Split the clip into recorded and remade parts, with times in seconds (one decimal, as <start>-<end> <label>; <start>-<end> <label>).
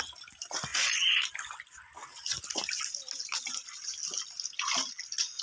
0.0-5.4 recorded